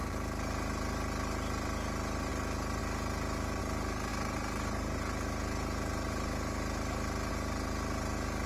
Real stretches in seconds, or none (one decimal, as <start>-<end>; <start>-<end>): 0.0-8.5